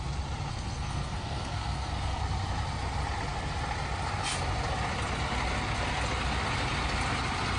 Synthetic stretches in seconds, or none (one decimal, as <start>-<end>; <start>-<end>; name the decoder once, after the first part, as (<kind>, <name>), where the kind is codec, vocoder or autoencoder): 0.5-2.2 (codec, SNAC)

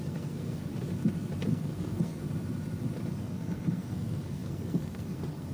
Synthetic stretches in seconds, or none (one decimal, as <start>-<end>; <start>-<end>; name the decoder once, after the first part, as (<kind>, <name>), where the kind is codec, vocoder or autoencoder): 0.0-0.7 (codec, SNAC); 1.5-2.2; 3.2-5.5

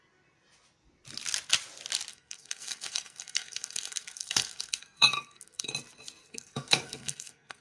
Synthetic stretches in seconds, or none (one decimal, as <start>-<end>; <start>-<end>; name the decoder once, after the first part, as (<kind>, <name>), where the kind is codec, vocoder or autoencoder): 2.1-5.7 (codec, SNAC); 6.2-7.6

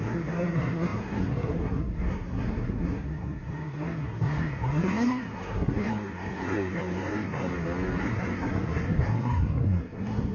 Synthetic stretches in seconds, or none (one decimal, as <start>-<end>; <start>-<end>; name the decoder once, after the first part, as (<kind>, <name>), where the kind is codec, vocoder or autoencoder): 0.0-7.5 (codec, SNAC); 8.0-10.3